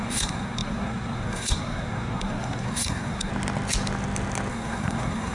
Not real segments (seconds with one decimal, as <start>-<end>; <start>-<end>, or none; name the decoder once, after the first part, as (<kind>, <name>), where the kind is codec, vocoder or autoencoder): 0.0-3.3 (codec, SNAC); 4.5-5.3